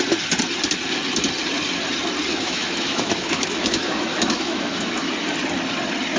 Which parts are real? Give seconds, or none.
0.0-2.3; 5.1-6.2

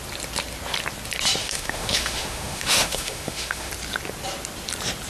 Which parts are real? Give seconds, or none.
0.0-1.4; 3.7-5.1

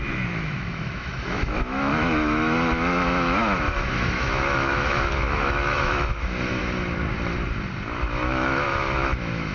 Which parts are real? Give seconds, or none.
6.6-8.0

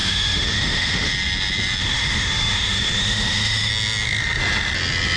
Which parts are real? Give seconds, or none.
1.1-1.8; 3.7-5.2

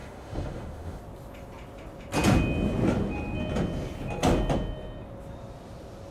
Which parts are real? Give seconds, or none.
1.0-6.1